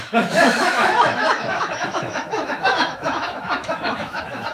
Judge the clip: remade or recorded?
remade